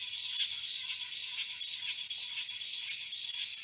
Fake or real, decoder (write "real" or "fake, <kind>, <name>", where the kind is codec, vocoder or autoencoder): real